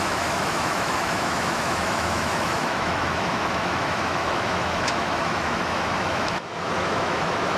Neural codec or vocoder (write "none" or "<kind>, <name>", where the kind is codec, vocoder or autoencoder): autoencoder, DAC-VAE